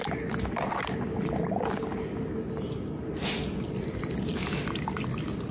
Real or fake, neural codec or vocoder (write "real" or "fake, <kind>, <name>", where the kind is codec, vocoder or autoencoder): real